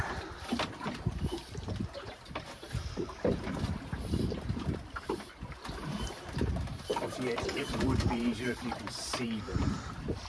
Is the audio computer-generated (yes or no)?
yes